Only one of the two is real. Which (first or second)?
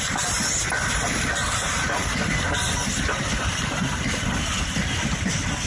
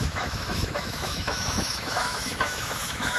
first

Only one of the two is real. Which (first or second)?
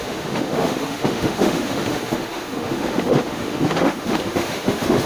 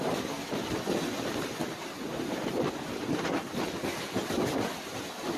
second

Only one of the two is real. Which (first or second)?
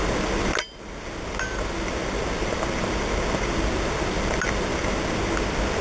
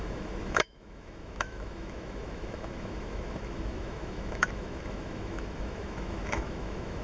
first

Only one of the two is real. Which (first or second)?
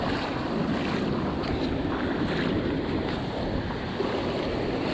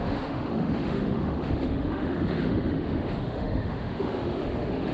first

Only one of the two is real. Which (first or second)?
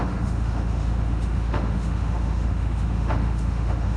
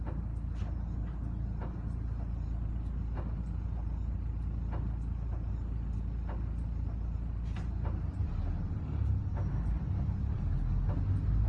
second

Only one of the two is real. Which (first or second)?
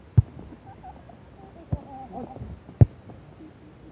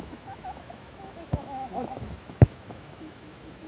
first